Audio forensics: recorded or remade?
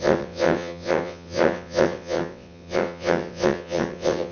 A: remade